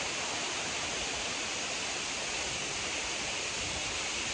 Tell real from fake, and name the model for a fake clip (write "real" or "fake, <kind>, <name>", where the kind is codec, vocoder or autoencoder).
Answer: real